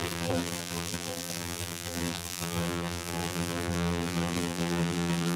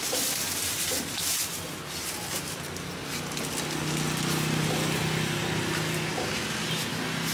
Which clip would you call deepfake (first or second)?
first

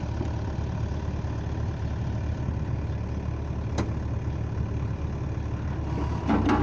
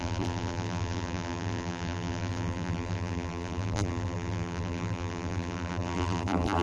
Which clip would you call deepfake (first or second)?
second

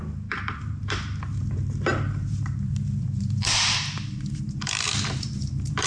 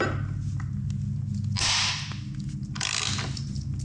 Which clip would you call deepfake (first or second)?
first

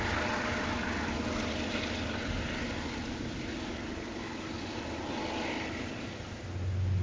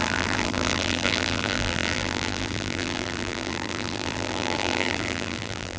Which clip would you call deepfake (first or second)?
second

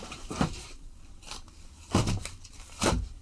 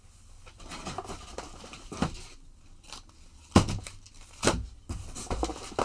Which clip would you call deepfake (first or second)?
first